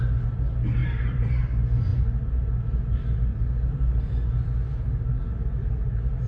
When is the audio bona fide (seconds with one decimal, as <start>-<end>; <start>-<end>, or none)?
0.0-0.8; 1.4-1.9; 3.2-6.3